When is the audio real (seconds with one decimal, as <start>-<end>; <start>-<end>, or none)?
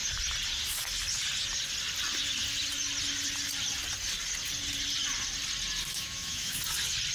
0.0-5.9; 6.6-7.1